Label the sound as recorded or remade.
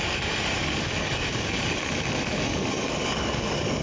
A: remade